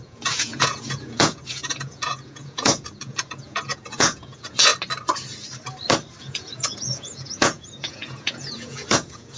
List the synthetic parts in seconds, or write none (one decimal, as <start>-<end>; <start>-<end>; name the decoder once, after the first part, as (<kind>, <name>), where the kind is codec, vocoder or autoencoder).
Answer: 0.0-4.7 (vocoder, Vocos); 6.2-9.4